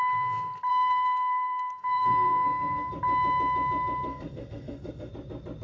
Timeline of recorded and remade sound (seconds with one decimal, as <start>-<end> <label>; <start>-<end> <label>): 0.0-0.7 recorded; 0.7-2.9 remade; 2.9-4.1 recorded; 4.1-5.1 remade; 5.1-5.6 recorded